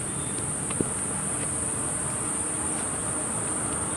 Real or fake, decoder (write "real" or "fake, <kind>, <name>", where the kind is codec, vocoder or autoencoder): real